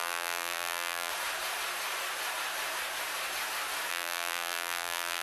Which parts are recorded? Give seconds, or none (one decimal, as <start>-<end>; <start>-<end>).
1.1-3.9